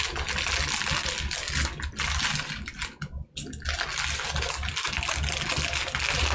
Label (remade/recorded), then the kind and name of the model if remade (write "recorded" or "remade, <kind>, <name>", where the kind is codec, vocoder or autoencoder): recorded